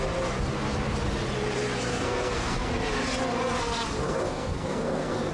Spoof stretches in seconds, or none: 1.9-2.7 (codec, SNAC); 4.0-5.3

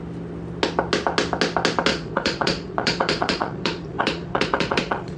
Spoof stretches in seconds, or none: 1.9-5.2 (vocoder, Vocos)

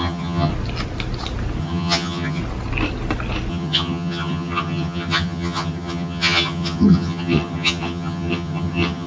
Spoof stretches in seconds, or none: 0.0-0.5 (vocoder, HiFi-GAN); 1.6-2.4; 3.5-9.1

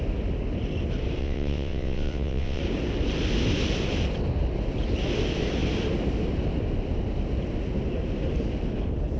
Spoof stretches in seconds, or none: 1.2-2.6 (vocoder, WaveNeXt)

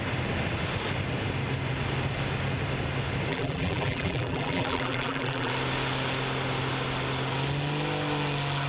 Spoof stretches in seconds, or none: 3.3-5.5 (vocoder, BigVGAN v2)

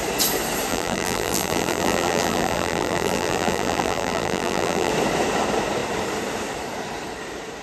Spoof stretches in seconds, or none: 0.7-4.9 (vocoder, BigVGAN v2)